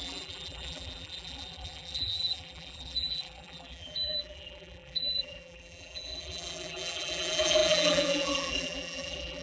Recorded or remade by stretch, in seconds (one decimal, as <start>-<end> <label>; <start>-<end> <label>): 0.0-9.4 remade